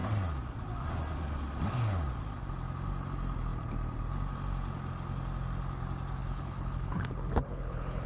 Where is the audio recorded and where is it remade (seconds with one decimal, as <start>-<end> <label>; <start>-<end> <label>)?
0.0-6.2 recorded; 6.2-8.1 remade